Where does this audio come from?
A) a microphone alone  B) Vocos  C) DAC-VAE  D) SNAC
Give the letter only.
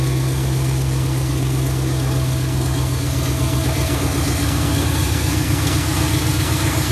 D